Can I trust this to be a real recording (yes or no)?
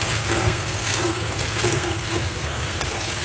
no